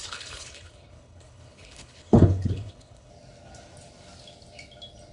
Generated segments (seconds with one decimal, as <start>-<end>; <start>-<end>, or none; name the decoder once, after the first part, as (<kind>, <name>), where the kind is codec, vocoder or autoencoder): 0.0-3.1 (codec, HILCodec)